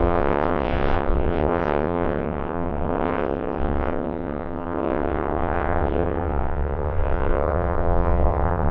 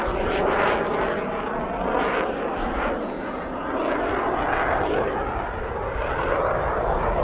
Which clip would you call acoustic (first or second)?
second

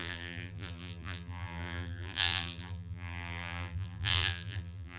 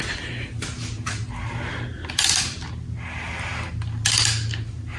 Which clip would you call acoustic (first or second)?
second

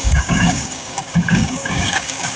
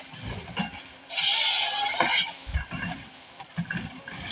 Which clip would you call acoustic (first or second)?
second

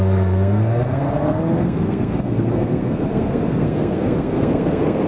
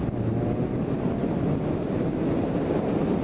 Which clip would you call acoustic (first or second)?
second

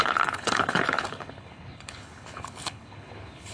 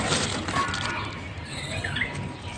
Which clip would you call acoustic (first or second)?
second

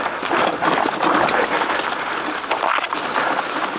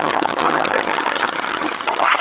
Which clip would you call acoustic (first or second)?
first